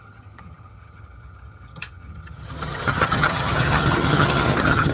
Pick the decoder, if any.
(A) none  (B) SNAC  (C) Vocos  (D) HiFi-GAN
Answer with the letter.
D